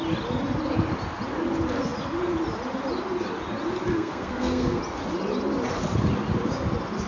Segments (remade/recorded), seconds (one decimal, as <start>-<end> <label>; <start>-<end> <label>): 0.0-3.9 recorded; 3.9-4.8 remade; 4.8-7.1 recorded